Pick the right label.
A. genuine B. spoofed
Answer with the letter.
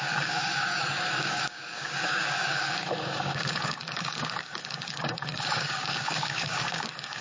B